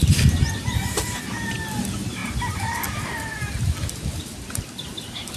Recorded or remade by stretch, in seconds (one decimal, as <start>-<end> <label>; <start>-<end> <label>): 0.0-5.4 recorded